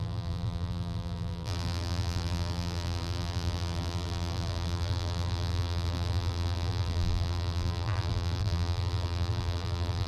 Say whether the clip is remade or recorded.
remade